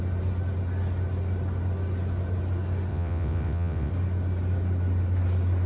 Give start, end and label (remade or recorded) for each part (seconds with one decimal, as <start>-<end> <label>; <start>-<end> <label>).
0.0-2.9 recorded; 2.9-3.9 remade; 3.9-5.7 recorded